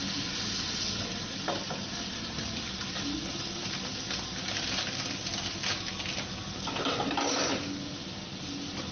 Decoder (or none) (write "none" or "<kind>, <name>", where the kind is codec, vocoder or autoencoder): none